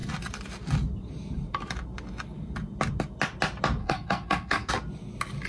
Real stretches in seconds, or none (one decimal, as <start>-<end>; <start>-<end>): 0.0-3.8; 4.7-5.5